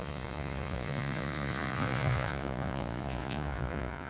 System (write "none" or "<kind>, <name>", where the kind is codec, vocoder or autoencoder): vocoder, Vocos